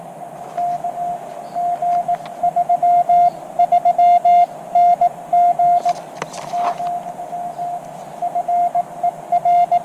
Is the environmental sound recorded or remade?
recorded